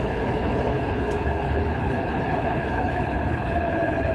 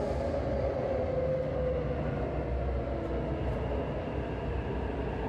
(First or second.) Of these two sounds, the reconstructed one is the first